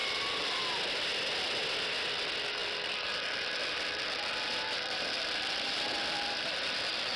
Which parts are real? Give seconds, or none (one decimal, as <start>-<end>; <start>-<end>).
0.6-2.6